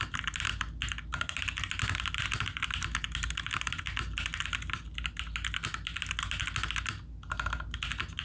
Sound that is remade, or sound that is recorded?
recorded